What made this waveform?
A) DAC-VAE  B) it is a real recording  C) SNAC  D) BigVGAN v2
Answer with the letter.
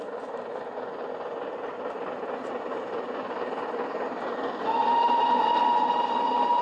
B